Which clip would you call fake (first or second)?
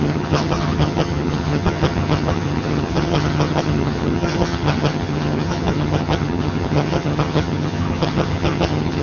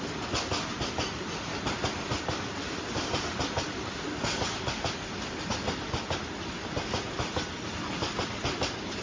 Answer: first